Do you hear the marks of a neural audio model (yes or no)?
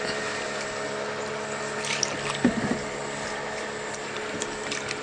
no